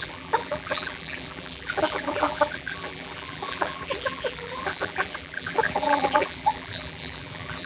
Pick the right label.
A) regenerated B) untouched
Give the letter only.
A